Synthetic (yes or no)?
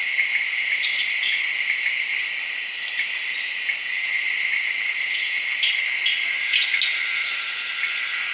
no